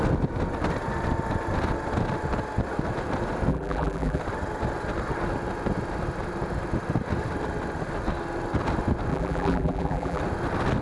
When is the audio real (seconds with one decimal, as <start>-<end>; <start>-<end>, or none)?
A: 0.0-3.5; 4.2-9.1; 10.2-10.8